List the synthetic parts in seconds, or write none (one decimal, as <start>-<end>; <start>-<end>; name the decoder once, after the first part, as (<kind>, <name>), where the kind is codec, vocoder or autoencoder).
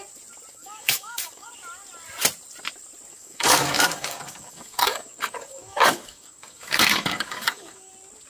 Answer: 0.5-1.5 (codec, DAC); 3.1-7.9